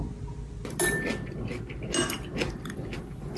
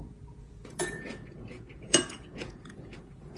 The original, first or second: first